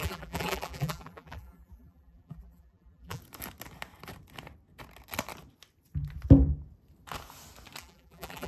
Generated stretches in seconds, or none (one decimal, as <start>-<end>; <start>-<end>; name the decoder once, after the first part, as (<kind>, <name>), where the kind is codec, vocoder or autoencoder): 0.0-3.2 (vocoder, BigVGAN v2); 7.8-8.5